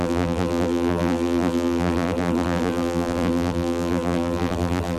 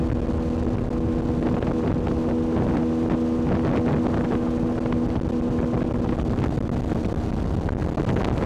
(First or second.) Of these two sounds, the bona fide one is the second